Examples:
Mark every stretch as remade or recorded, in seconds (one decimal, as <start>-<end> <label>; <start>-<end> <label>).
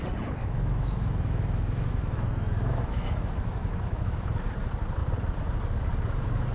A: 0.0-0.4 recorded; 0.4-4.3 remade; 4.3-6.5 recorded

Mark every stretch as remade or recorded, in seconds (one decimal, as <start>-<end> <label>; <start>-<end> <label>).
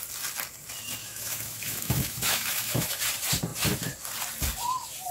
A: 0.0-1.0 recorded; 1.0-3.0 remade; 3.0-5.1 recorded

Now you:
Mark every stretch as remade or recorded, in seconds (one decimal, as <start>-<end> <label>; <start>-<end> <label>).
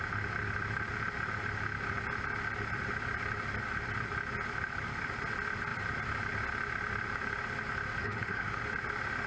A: 0.0-8.0 recorded; 8.0-8.6 remade; 8.6-9.3 recorded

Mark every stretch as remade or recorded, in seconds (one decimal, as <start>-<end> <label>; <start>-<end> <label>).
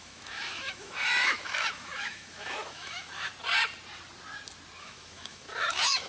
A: 0.0-3.3 remade; 3.3-4.8 recorded; 4.8-6.1 remade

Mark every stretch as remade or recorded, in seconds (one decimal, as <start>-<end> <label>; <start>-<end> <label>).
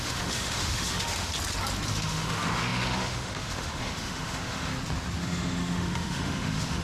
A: 0.0-1.3 remade; 1.3-1.9 recorded; 1.9-4.7 remade; 4.7-5.2 recorded; 5.2-6.8 remade